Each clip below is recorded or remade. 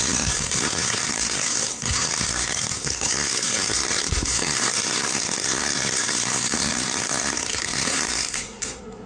remade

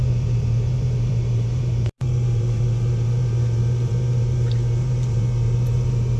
remade